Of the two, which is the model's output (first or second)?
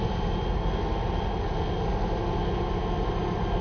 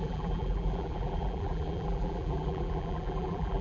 second